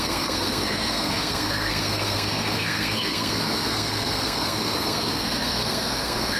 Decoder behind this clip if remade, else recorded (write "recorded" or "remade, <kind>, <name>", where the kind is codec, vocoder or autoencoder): remade, codec, SNAC